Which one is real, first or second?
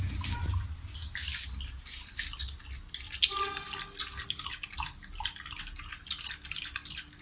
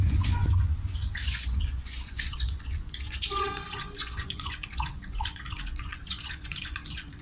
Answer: first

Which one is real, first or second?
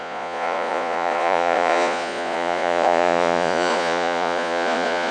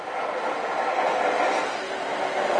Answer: second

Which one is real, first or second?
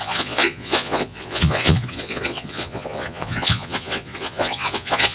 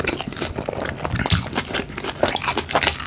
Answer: second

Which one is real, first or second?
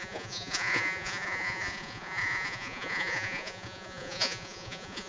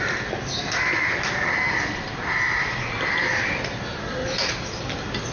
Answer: second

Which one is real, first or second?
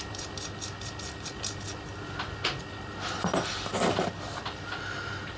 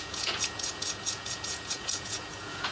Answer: first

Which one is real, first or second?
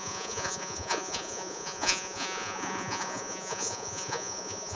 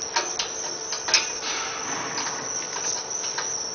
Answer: second